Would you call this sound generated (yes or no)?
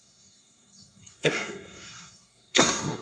yes